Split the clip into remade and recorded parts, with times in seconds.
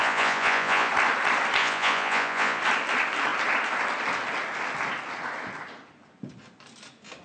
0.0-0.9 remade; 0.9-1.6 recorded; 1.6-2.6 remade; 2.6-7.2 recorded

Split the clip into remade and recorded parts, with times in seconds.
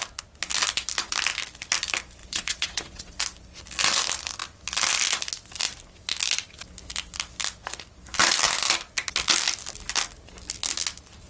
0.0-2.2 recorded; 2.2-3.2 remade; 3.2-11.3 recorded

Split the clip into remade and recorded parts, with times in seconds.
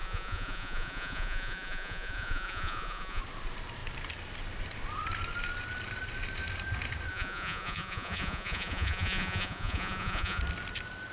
0.0-3.2 remade; 3.2-7.1 recorded; 7.1-10.4 remade; 10.4-11.1 recorded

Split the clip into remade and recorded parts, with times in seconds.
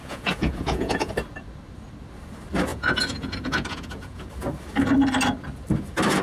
0.0-1.1 remade; 1.1-2.7 recorded; 2.7-4.3 remade; 4.3-6.2 recorded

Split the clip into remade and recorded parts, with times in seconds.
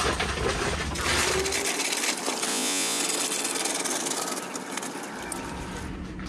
0.0-2.5 recorded; 2.5-3.0 remade; 3.0-6.3 recorded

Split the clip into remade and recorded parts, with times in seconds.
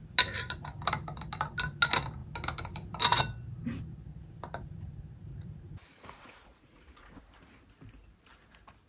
0.0-5.3 recorded; 5.3-7.2 remade; 7.2-8.9 recorded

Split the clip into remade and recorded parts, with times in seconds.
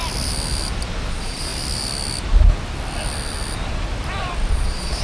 0.0-1.1 recorded; 1.1-1.5 remade; 1.5-4.5 recorded; 4.5-5.0 remade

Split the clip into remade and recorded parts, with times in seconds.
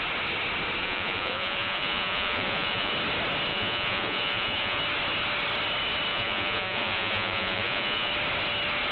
0.0-0.8 recorded; 0.8-2.9 remade; 2.9-3.5 recorded; 3.5-4.8 remade; 4.8-6.1 recorded; 6.1-8.1 remade; 8.1-8.9 recorded